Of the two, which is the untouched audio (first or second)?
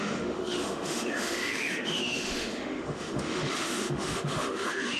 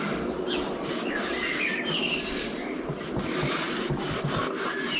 second